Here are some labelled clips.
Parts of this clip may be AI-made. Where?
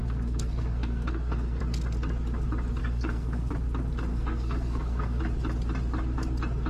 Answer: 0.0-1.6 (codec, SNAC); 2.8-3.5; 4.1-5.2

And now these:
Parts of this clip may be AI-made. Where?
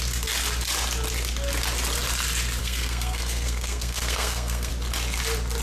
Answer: 2.6-4.7 (codec, SNAC)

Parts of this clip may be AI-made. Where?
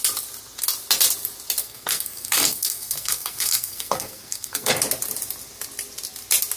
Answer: 1.6-4.7 (codec, SNAC)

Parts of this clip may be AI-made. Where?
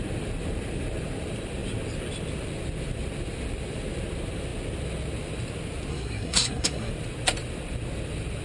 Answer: 5.9-6.9 (codec, SNAC)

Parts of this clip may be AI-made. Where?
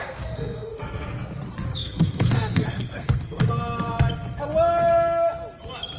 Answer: 0.0-1.2 (codec, SNAC); 1.8-3.5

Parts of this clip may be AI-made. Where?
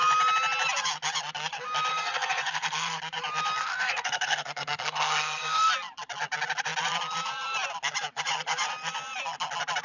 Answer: 1.9-3.0 (codec, SNAC); 3.6-5.7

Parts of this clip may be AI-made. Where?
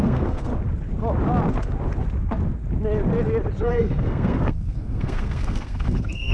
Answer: 0.0-0.5 (codec, SNAC); 3.6-6.3